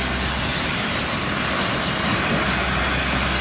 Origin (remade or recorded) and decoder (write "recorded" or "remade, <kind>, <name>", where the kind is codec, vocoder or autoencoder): recorded